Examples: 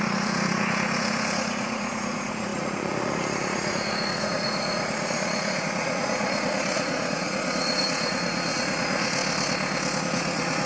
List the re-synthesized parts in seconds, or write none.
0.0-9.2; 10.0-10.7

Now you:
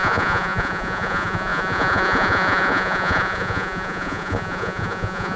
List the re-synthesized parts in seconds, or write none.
0.0-5.4

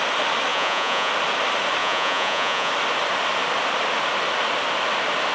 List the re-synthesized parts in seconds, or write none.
0.5-1.1; 1.8-2.7

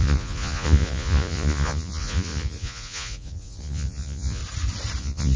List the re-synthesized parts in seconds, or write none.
0.0-4.4; 5.0-5.4

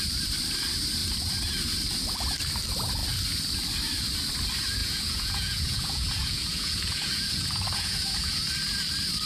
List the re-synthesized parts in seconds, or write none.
4.8-8.5

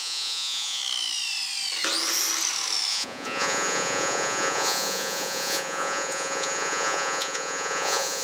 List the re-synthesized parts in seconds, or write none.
0.0-0.8; 2.9-8.2

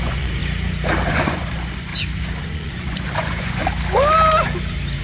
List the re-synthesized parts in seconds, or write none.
0.0-0.4; 1.1-1.9; 2.4-3.6

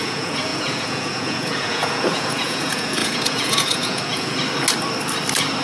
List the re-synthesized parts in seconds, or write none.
0.0-4.4